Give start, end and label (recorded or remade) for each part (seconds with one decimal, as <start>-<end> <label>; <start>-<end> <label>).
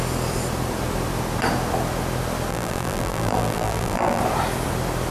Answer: 0.0-2.5 recorded; 2.5-4.2 remade; 4.2-5.1 recorded